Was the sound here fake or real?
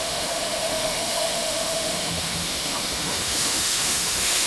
fake